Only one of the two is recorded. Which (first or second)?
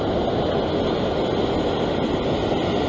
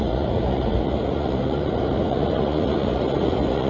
first